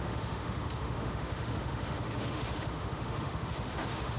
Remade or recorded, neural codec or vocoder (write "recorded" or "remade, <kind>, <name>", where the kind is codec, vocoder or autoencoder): remade, autoencoder, DAC-VAE